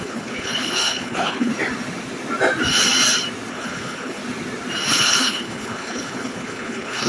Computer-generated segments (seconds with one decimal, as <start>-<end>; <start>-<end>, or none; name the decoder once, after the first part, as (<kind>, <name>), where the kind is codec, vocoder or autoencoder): 0.0-1.5 (codec, HILCodec); 3.5-4.2; 4.9-7.1